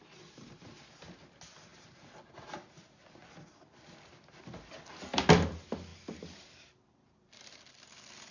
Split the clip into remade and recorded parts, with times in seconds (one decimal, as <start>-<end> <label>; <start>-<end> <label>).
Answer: 0.0-8.3 recorded